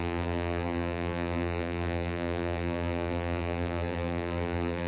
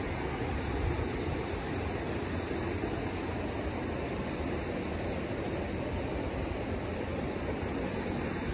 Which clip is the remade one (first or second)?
first